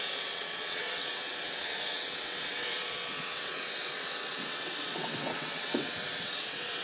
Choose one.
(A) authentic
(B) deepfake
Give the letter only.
B